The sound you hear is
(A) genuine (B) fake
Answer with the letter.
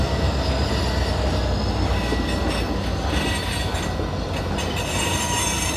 A